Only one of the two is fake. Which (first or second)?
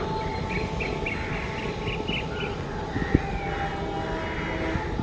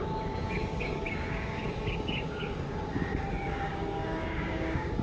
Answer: second